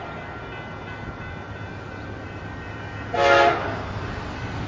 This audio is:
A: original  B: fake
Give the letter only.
A